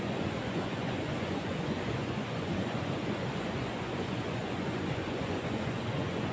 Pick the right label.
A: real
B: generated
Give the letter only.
B